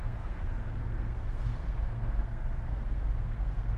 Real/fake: fake